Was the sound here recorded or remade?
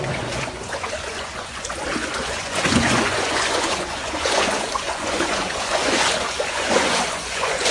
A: remade